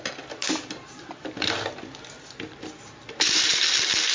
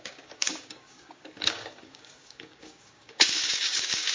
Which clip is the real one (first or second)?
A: first